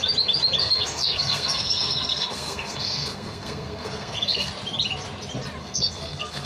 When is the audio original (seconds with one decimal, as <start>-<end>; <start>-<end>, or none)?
0.0-0.6; 4.5-5.6